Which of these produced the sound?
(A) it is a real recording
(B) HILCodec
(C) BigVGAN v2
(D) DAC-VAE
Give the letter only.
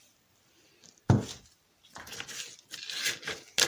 A